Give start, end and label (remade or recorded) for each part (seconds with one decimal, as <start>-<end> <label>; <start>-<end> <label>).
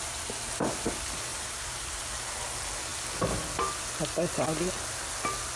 0.0-1.3 recorded; 1.3-2.0 remade; 2.0-5.6 recorded